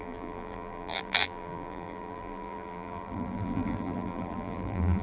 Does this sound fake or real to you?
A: fake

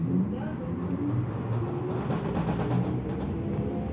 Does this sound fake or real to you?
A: real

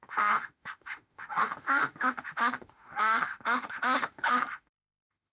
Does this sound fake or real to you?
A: fake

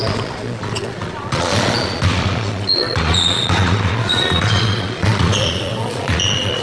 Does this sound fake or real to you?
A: fake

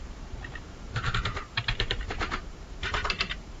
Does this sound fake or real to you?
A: fake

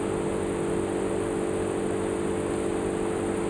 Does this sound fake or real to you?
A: real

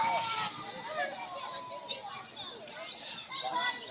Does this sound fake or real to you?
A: real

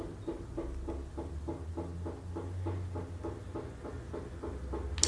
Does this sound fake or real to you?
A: real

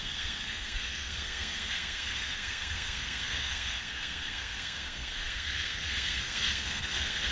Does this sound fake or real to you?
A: fake